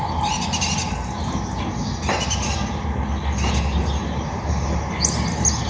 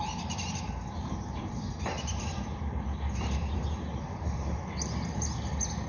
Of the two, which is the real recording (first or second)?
first